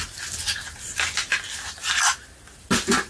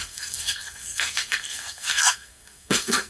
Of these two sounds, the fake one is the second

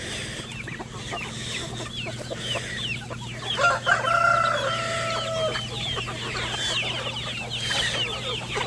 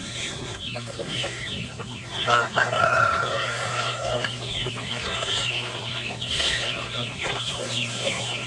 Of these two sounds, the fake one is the second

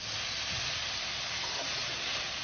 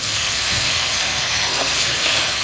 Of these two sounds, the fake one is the second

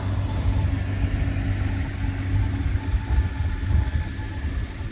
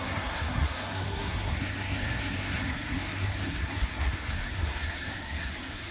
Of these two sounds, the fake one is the second